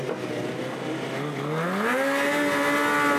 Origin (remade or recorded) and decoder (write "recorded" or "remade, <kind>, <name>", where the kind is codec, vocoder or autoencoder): recorded